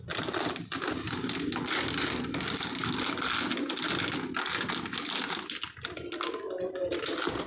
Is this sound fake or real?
real